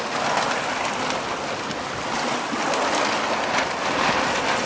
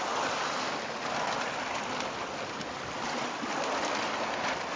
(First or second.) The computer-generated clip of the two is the second